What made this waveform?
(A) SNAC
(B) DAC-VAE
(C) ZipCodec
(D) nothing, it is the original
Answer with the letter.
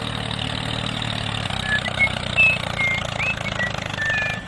D